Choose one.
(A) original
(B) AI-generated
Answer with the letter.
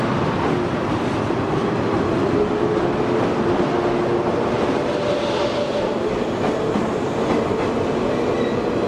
A